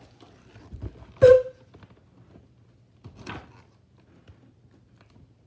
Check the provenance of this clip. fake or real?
real